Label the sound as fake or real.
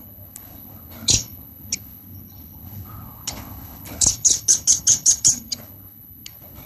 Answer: fake